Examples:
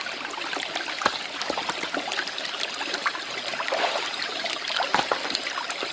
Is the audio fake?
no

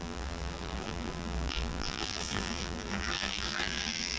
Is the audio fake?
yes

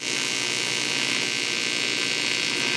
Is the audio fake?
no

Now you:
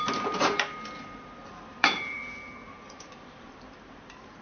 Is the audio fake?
yes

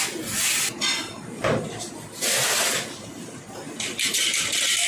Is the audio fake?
no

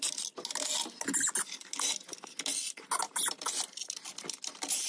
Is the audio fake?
no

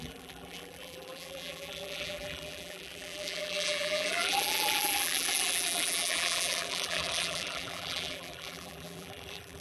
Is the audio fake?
yes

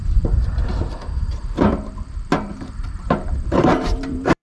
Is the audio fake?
yes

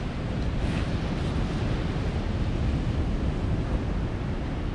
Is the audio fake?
no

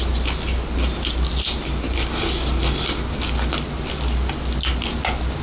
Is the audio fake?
no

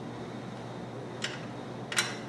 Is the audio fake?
no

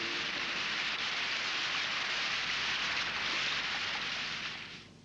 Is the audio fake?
yes